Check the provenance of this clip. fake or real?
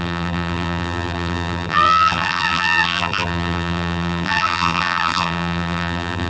fake